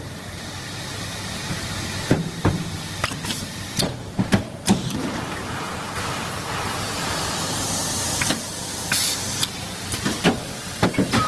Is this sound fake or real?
fake